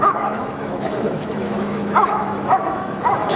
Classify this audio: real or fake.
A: fake